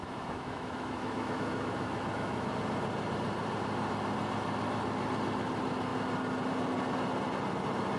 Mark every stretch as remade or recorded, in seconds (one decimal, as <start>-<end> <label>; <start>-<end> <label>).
0.0-2.5 remade; 2.5-8.0 recorded